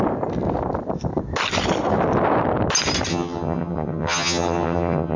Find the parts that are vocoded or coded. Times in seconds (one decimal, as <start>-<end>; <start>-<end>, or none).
3.1-5.2

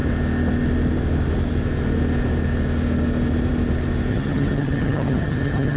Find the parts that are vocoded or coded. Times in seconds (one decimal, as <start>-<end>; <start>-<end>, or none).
4.1-5.8

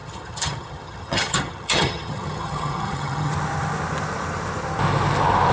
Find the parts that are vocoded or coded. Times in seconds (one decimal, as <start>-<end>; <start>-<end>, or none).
0.0-3.3

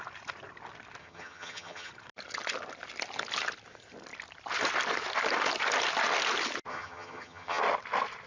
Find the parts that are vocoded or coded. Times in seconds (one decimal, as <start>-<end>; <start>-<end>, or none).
1.0-1.9; 6.7-7.6